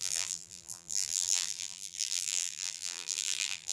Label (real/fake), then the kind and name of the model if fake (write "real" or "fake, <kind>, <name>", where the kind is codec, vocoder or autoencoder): fake, vocoder, BigVGAN v2